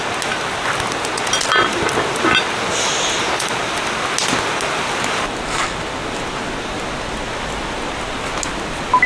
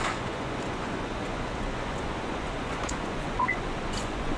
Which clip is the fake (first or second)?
second